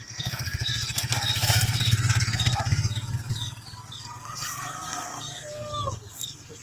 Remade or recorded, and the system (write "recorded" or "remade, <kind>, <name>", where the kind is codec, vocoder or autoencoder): remade, codec, SNAC